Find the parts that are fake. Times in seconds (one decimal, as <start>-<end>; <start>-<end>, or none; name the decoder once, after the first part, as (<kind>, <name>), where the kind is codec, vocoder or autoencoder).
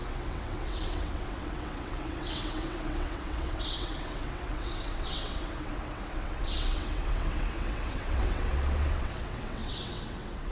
0.0-10.5 (vocoder, WaveNeXt)